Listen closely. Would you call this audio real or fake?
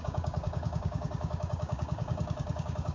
fake